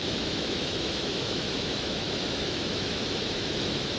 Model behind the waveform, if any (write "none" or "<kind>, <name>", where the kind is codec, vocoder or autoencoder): autoencoder, DAC-VAE